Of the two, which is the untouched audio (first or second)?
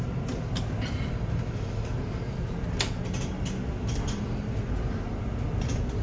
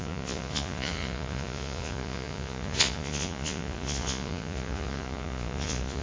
first